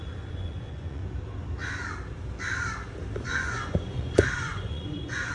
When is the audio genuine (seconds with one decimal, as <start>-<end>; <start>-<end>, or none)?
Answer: 1.0-3.2